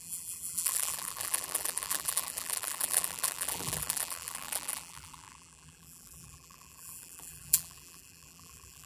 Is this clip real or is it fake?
fake